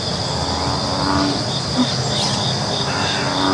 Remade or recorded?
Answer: recorded